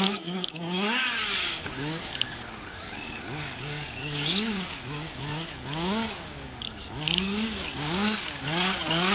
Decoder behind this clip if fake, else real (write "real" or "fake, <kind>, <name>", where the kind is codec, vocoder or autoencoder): fake, codec, DAC